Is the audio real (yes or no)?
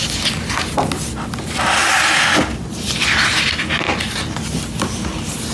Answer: yes